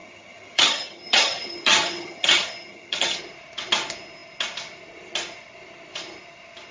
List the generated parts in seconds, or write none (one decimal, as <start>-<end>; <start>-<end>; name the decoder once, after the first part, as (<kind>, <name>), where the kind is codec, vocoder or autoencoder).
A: 0.0-3.2 (vocoder, HiFi-GAN)